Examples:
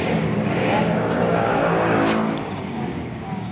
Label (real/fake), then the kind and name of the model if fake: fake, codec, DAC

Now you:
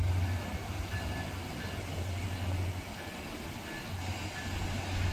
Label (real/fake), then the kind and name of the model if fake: real